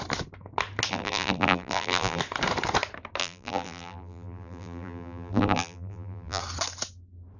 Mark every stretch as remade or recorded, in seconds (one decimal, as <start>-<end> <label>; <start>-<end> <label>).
0.0-0.9 recorded; 0.9-2.2 remade; 2.2-3.2 recorded; 3.2-6.4 remade; 6.4-7.4 recorded